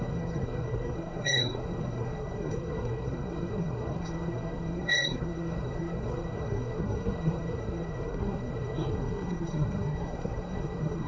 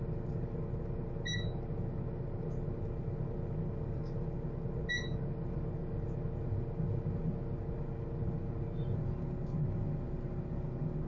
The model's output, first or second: first